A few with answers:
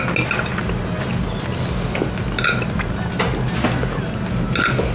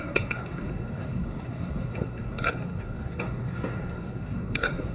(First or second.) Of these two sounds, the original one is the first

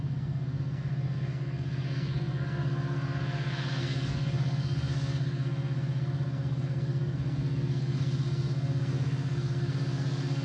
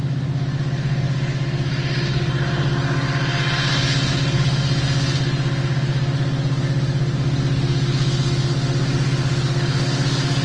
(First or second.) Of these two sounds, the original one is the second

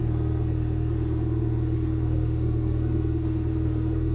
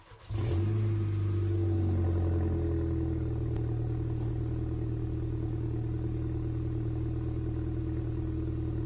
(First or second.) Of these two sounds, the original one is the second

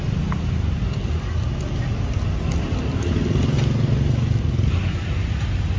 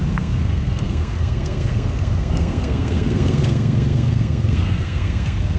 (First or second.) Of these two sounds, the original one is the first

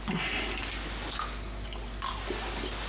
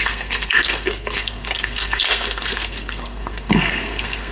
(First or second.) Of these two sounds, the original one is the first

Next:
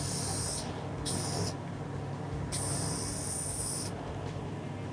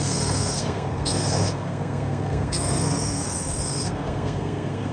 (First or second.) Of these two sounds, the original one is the first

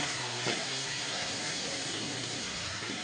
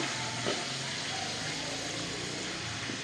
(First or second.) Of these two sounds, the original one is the second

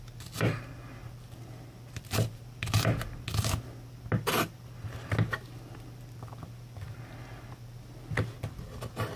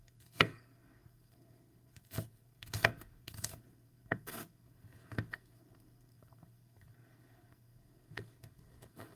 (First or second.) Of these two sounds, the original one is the first